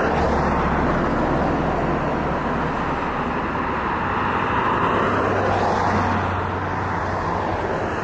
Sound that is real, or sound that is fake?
real